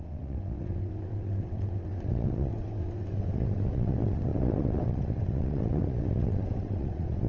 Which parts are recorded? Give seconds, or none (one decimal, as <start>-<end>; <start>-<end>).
none